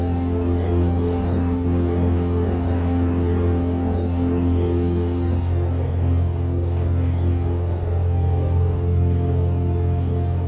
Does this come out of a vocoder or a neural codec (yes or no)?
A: yes